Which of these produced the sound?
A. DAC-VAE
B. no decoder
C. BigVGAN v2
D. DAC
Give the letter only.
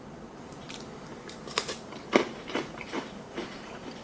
C